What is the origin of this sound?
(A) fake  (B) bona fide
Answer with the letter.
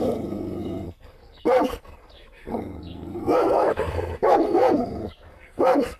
A